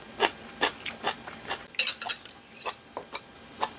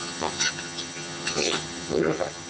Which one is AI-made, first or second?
second